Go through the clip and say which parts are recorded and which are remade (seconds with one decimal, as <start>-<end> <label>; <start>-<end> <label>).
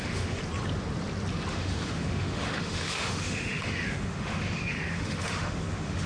0.0-0.4 remade; 0.4-1.5 recorded; 1.5-6.1 remade